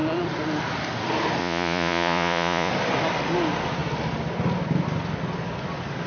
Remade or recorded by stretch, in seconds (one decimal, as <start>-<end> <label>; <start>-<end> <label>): 0.0-1.4 recorded; 1.4-2.7 remade; 2.7-6.1 recorded